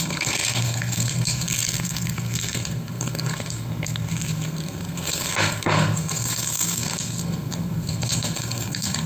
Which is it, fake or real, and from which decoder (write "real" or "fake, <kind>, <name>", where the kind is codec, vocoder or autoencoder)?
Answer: fake, codec, SNAC